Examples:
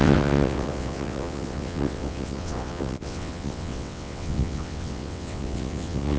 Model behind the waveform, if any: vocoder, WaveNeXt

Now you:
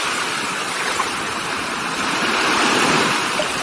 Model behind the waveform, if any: vocoder, BigVGAN v2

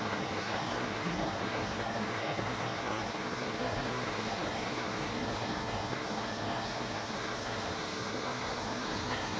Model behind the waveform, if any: codec, SNAC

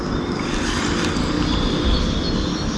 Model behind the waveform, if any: none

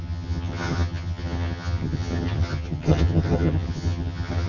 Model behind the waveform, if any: vocoder, HiFi-GAN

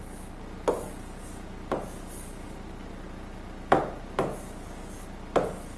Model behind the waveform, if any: none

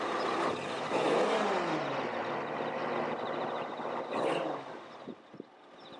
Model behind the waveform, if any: none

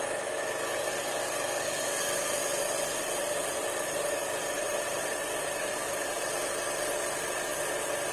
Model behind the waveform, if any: vocoder, BigVGAN v2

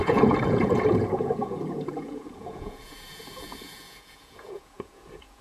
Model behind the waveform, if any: vocoder, Vocos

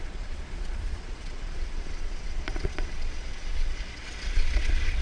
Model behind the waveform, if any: vocoder, Vocos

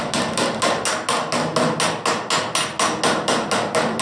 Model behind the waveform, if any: none